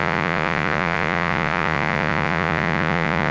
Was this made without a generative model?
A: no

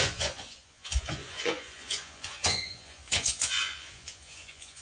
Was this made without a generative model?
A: no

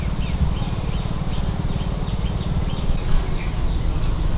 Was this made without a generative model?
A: yes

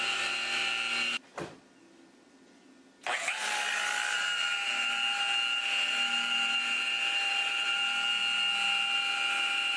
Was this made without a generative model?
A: yes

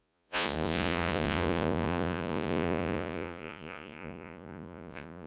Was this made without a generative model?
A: no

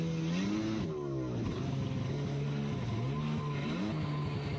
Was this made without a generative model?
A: yes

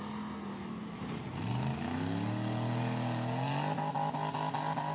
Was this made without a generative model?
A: yes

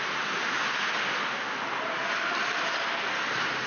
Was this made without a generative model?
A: yes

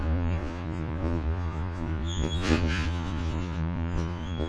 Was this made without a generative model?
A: no